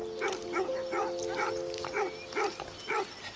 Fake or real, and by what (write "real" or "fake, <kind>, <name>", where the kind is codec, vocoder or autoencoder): real